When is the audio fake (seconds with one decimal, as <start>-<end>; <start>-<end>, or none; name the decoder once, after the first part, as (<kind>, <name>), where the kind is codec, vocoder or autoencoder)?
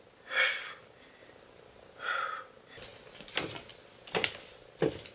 none